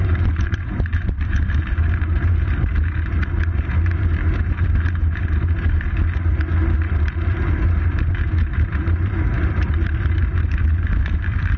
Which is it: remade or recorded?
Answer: remade